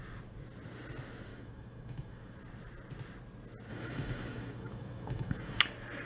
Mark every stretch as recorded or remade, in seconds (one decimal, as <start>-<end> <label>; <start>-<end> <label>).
0.0-1.3 recorded; 1.3-2.4 remade; 2.4-3.7 recorded; 3.7-5.6 remade; 5.6-6.1 recorded